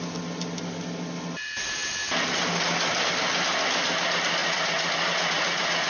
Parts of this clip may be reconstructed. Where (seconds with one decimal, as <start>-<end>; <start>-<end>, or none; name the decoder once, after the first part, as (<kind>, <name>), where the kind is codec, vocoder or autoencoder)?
4.4-5.9 (vocoder, Vocos)

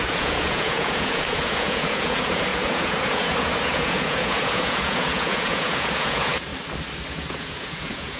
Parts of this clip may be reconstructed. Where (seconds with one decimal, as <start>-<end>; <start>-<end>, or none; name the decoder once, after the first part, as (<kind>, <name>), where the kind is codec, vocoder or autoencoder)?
0.0-6.5 (vocoder, Vocos); 7.1-8.2

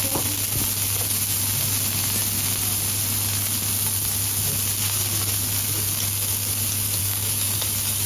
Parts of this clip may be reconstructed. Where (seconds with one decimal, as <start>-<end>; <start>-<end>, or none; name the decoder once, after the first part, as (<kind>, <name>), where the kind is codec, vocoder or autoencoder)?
7.0-7.6 (codec, DAC)

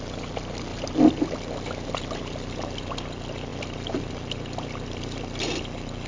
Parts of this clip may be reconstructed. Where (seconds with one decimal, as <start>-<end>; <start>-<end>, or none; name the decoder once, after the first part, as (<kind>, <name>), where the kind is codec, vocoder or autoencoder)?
none

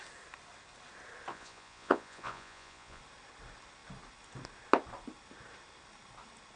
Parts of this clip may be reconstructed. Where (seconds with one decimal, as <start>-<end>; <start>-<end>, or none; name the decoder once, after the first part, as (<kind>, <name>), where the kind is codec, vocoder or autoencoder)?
1.3-3.0 (vocoder, Vocos)

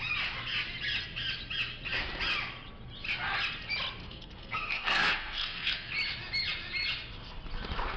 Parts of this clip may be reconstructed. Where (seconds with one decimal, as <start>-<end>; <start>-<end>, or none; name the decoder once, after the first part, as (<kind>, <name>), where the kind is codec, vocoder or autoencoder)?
4.0-5.9 (codec, SNAC)